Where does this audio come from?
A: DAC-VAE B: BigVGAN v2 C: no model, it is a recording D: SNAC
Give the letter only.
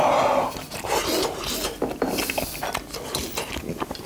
C